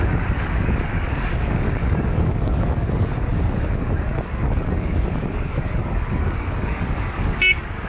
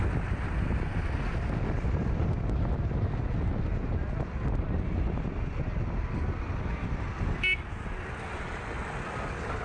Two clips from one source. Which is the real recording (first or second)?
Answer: second